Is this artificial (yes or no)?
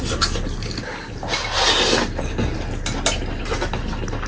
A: no